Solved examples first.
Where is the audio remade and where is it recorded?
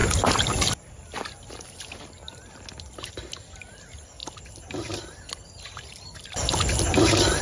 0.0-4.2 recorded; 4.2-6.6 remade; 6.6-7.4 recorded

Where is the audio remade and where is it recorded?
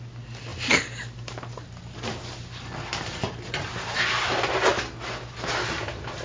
0.0-4.7 remade; 4.7-5.5 recorded; 5.5-6.2 remade